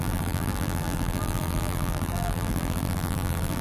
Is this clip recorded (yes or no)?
no